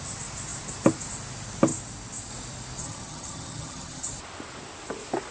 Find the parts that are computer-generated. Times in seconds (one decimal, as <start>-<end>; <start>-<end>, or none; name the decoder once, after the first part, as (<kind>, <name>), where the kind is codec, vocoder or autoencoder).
2.8-4.1 (vocoder, HiFi-GAN)